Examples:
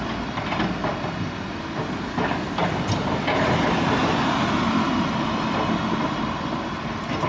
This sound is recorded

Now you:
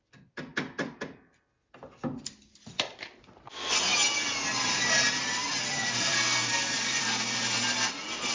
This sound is recorded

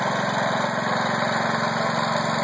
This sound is recorded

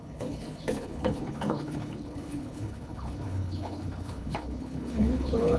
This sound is remade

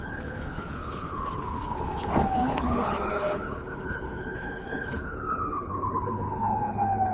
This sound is remade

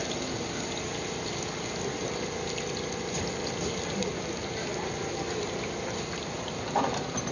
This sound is recorded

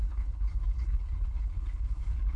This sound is remade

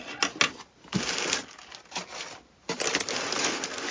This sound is recorded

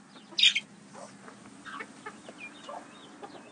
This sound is recorded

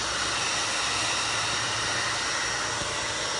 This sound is recorded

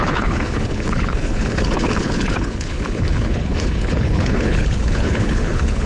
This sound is remade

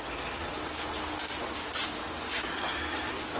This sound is recorded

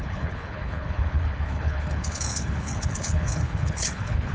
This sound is remade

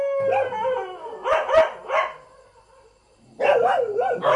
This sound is recorded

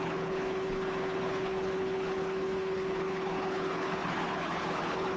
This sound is remade